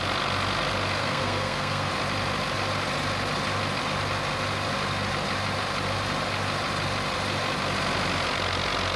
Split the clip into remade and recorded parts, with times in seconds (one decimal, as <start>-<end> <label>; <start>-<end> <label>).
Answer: 0.0-1.0 recorded; 1.0-1.9 remade; 1.9-9.0 recorded